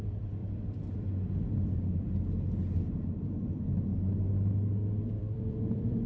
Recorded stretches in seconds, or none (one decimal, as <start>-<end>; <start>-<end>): 3.9-5.1

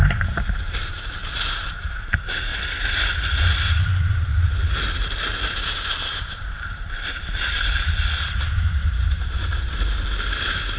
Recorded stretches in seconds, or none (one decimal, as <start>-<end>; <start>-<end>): 2.5-3.8; 4.3-5.9; 9.5-10.8

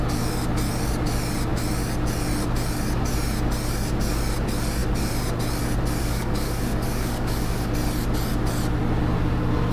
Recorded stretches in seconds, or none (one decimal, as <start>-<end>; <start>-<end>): 0.0-6.0; 7.7-9.7

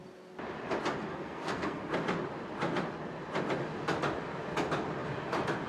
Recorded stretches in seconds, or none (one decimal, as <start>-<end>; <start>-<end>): 0.0-1.1; 1.8-5.7